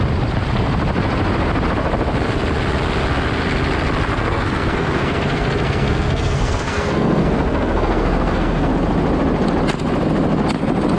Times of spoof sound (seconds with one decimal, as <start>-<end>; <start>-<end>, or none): 4.1-8.7